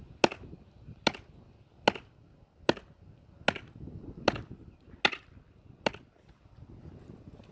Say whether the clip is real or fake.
real